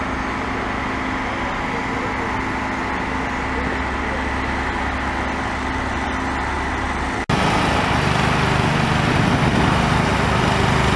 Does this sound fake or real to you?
real